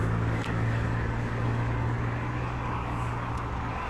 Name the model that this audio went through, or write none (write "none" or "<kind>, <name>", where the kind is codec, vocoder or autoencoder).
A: codec, DAC